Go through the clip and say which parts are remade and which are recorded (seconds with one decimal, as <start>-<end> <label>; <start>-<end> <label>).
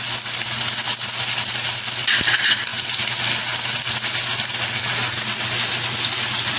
0.0-6.6 recorded